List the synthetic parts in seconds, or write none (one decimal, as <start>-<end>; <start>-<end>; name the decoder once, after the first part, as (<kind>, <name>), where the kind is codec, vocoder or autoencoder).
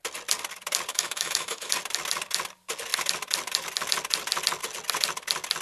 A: 0.9-1.7 (autoencoder, DAC-VAE)